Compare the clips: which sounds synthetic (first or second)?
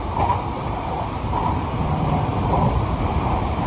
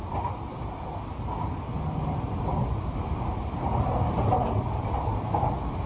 first